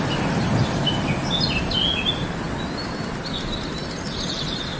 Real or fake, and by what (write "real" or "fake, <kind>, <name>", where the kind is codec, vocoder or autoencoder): real